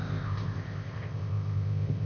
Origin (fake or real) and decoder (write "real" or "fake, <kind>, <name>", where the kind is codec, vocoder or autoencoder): fake, codec, ZipCodec